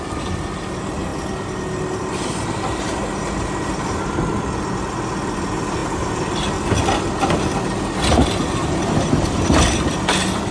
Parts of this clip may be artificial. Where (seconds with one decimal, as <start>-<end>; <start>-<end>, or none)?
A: none